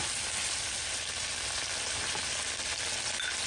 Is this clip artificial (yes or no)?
no